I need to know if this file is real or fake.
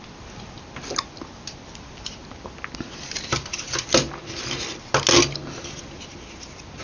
real